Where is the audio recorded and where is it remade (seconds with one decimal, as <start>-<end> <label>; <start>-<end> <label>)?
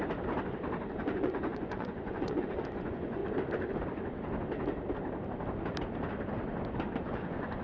0.0-1.0 recorded; 1.0-3.2 remade; 3.2-7.0 recorded; 7.0-7.6 remade